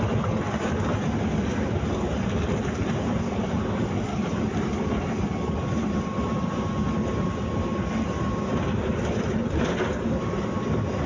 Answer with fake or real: real